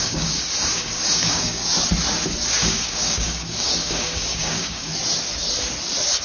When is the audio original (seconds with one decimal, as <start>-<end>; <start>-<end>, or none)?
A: 1.6-2.6; 4.9-6.2